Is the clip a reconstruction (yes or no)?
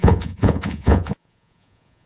yes